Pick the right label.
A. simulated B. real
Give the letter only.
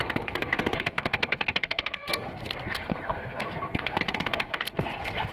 A